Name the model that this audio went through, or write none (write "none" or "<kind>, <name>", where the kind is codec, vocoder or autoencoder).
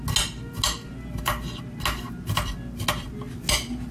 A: none